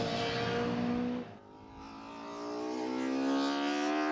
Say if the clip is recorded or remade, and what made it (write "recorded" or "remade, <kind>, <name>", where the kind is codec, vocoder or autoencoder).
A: recorded